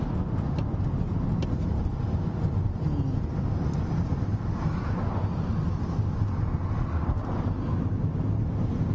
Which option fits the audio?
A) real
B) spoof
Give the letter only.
A